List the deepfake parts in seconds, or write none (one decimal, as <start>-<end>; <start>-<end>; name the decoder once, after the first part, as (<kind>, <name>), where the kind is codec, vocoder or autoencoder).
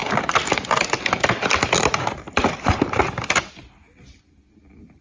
none